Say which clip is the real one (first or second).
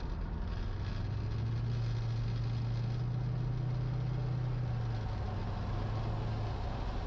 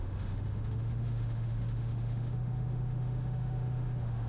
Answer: first